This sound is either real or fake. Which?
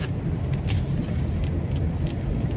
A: real